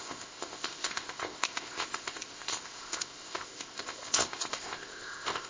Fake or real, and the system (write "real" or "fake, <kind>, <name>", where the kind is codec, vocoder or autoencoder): fake, codec, ZipCodec